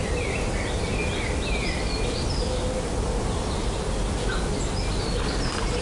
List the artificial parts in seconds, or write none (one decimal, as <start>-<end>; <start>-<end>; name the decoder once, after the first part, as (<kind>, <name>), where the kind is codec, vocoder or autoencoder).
0.0-0.9 (vocoder, BigVGAN v2); 4.4-5.8